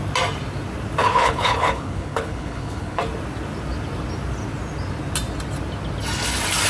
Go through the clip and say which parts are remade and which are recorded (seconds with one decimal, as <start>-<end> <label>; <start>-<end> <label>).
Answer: 0.0-1.0 recorded; 1.0-3.0 remade; 3.0-6.7 recorded